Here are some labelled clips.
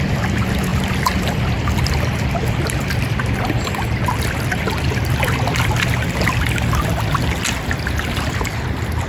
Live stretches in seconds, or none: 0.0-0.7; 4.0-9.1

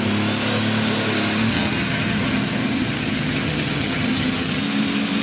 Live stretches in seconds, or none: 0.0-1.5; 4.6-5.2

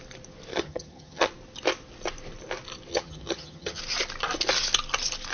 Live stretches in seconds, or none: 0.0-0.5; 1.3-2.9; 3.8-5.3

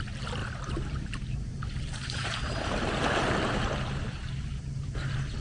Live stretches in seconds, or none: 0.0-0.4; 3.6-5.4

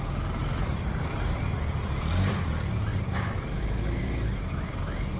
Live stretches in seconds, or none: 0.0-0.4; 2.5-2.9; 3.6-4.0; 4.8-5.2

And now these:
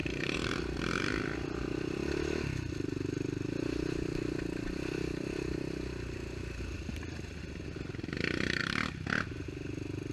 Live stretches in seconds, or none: 0.6-10.1

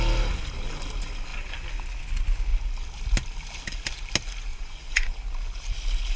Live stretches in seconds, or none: 0.0-4.5; 5.1-6.2

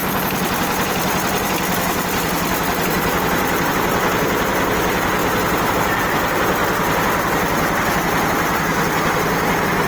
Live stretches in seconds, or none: 0.0-3.7; 5.2-5.7; 6.6-7.9